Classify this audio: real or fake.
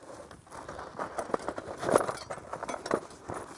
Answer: real